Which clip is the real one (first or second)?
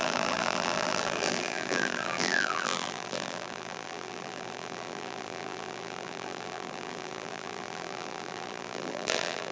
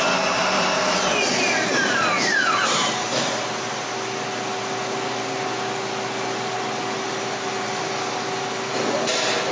second